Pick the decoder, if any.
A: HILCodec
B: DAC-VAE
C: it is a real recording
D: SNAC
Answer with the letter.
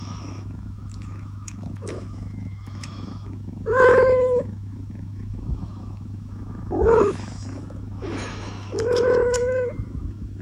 B